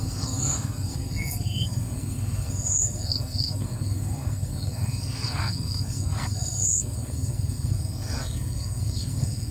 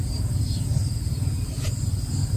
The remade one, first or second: first